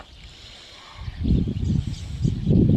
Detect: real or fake real